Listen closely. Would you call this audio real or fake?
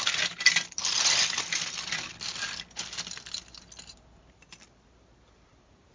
real